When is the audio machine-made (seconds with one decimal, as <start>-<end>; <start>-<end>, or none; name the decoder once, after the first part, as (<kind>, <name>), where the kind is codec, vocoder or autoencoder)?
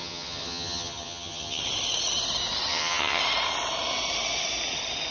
0.0-1.6 (vocoder, HiFi-GAN); 2.7-3.2